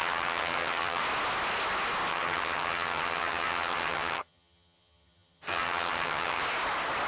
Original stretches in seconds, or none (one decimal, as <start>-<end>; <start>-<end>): 1.0-2.1; 6.4-7.1